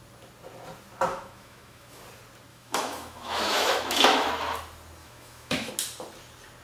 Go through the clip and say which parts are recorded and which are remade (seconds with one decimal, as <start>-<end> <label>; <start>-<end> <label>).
0.0-1.1 recorded; 1.1-2.0 remade; 2.0-2.5 recorded; 2.5-4.3 remade; 4.3-5.0 recorded; 5.0-5.7 remade; 5.7-6.6 recorded